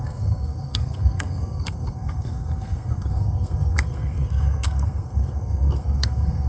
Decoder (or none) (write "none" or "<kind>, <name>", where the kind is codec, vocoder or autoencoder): codec, SNAC